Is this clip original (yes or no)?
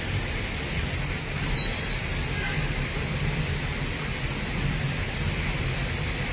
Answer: yes